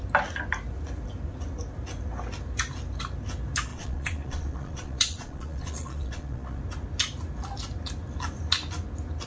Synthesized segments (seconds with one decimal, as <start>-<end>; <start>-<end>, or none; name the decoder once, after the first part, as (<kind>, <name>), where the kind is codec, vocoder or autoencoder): 3.7-6.6 (vocoder, Vocos)